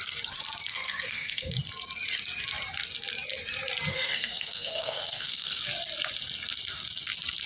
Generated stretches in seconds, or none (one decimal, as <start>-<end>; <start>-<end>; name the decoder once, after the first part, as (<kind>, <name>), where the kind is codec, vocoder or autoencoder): 0.7-1.5 (codec, SNAC); 3.9-5.6